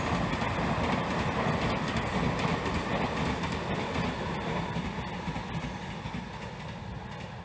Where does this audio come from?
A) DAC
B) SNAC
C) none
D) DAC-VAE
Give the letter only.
C